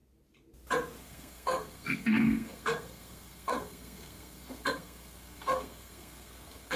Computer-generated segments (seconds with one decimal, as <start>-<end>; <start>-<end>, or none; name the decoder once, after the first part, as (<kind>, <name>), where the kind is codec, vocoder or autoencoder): 1.0-6.8 (codec, SNAC)